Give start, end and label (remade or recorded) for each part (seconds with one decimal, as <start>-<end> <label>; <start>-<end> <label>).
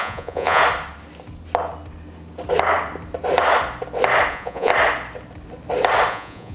0.0-0.6 remade; 0.6-4.3 recorded; 4.3-4.7 remade; 4.7-6.1 recorded; 6.1-6.5 remade